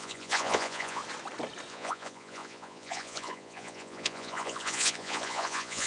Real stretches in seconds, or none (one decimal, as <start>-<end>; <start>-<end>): 1.0-1.7